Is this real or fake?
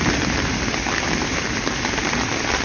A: real